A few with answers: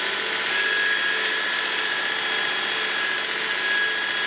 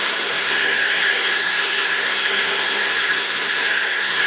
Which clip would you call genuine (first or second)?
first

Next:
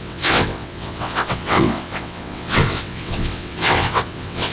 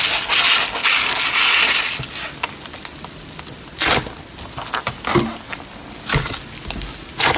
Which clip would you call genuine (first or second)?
second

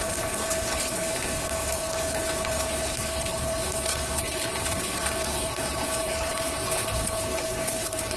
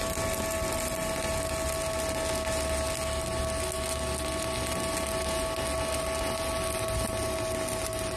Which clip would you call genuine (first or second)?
second